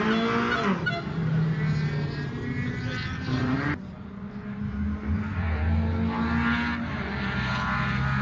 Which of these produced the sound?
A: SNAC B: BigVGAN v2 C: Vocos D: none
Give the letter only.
D